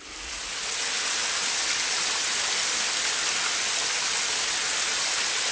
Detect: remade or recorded recorded